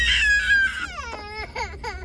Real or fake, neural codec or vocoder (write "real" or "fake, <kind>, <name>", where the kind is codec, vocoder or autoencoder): real